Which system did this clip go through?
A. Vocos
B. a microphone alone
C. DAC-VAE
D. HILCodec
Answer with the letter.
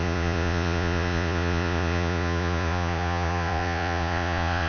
A